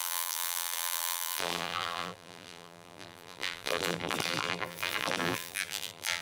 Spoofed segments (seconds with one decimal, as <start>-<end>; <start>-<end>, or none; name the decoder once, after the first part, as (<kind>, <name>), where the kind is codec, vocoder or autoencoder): 0.0-6.2 (vocoder, BigVGAN v2)